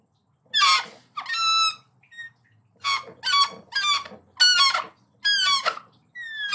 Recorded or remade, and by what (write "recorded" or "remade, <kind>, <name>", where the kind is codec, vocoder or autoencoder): recorded